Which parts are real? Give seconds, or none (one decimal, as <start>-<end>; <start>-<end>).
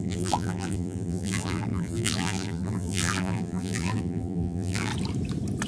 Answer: 4.9-5.7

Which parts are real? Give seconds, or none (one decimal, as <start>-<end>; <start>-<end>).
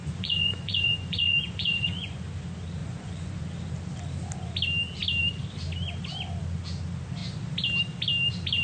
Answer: 2.2-2.8; 3.4-8.6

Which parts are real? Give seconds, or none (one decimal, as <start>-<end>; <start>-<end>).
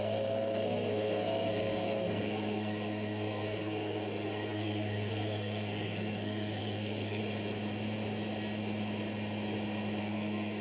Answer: 7.2-10.0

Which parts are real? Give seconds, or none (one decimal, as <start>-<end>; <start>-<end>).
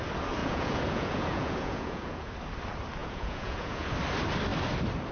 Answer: 0.0-0.4; 2.3-3.0; 3.9-5.1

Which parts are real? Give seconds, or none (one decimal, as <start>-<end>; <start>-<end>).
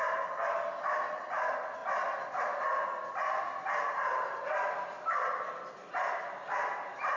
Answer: 0.0-7.2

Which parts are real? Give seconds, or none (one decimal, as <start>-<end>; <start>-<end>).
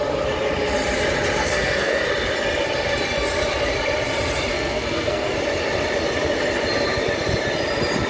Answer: 0.0-1.4; 2.1-4.5; 5.3-8.1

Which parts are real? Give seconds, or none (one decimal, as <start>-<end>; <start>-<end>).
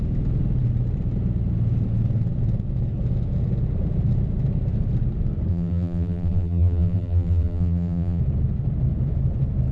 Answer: 0.0-5.5; 8.2-9.7